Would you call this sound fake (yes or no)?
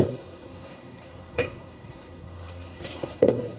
yes